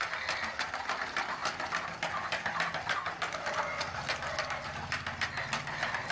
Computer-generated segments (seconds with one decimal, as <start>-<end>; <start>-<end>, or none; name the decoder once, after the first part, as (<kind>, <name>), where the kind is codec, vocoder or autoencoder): none